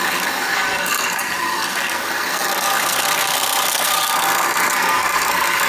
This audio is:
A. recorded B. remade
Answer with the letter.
B